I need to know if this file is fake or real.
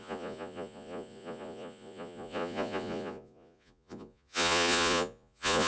fake